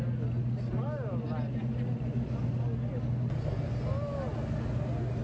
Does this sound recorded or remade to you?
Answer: recorded